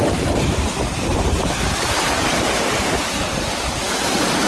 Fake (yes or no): yes